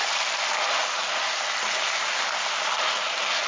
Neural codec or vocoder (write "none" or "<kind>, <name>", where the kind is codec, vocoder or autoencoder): none